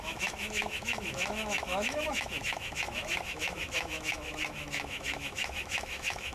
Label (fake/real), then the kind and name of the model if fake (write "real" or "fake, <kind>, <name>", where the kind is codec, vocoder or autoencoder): fake, autoencoder, DAC-VAE